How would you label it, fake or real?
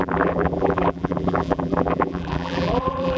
fake